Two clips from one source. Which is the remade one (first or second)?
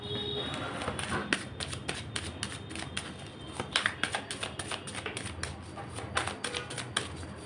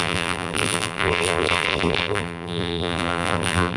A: second